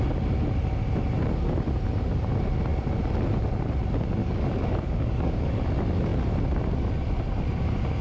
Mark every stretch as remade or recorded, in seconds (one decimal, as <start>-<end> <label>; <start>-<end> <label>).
0.0-4.2 recorded; 4.2-5.6 remade; 5.6-8.0 recorded